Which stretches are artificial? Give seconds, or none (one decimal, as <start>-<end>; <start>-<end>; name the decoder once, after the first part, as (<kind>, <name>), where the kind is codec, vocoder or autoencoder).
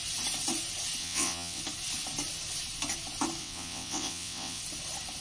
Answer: 1.0-1.6 (vocoder, WaveNeXt); 3.4-4.6